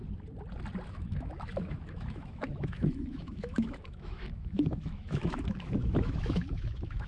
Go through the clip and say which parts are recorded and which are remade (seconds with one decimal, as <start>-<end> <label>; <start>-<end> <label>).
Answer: 0.0-0.9 recorded; 0.9-7.1 remade